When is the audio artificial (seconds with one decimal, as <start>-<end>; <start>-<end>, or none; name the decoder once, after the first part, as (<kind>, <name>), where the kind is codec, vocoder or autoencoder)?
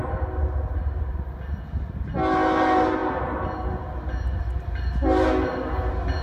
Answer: none